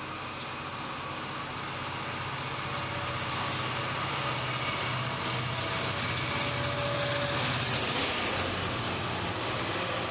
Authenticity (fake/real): real